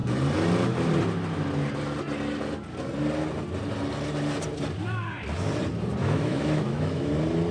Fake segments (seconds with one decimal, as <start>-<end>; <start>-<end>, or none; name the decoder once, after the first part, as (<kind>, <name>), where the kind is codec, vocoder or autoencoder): 6.0-7.1 (autoencoder, DAC-VAE)